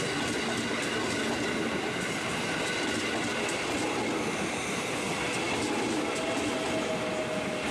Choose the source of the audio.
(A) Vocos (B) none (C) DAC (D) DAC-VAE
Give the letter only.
B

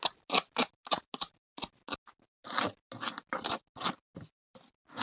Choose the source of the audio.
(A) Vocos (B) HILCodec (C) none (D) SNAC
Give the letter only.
C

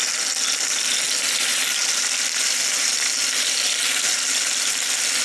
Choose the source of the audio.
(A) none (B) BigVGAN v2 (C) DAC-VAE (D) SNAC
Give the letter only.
A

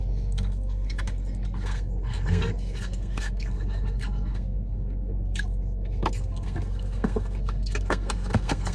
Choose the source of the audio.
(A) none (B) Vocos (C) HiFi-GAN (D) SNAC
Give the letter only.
D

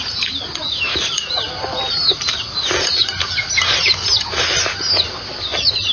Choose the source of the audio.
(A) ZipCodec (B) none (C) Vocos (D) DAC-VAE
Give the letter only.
B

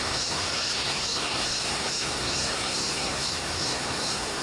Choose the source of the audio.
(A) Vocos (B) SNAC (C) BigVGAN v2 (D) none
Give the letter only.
B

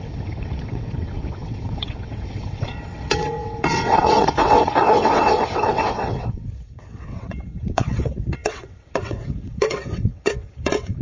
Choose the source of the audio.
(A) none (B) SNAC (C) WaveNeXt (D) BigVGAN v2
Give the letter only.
C